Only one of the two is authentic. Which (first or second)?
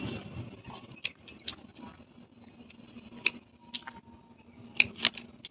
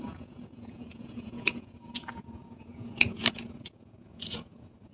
first